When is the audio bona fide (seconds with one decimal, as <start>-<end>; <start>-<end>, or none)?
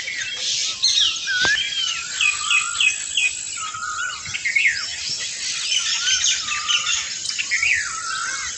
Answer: 0.0-8.6